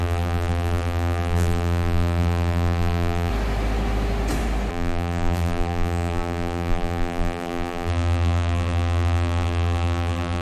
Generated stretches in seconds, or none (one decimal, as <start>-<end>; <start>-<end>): 0.0-3.3; 4.7-10.4